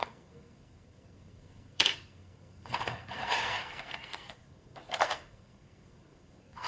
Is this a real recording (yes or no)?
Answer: no